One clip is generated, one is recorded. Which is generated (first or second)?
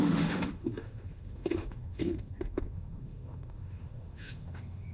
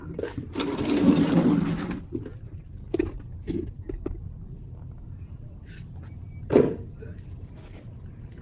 first